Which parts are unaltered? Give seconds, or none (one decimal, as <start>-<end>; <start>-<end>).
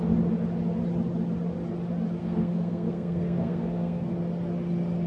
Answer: 0.0-2.2; 4.1-5.1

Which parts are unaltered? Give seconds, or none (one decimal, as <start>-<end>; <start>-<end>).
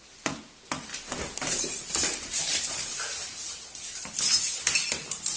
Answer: 0.0-0.9; 4.1-5.4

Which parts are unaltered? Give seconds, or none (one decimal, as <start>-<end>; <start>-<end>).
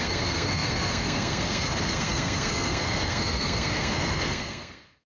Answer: none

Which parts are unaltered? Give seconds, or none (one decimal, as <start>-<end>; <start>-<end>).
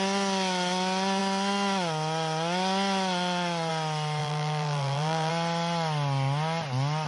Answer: 0.0-4.2; 5.3-7.1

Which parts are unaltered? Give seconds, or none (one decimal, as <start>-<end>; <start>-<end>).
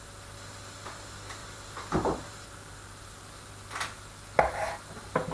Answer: 0.0-1.4; 2.7-5.3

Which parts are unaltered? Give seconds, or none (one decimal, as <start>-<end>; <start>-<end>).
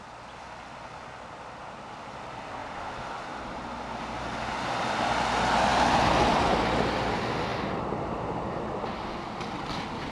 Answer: 0.0-10.1